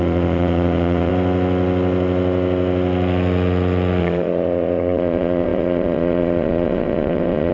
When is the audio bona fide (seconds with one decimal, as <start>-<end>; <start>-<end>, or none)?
1.1-4.0